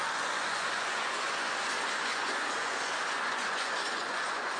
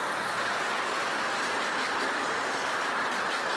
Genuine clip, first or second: second